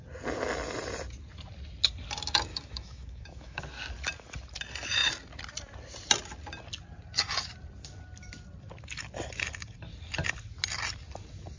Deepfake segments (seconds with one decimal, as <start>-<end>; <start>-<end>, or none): 2.5-3.6